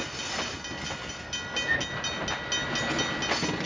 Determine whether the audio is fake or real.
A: real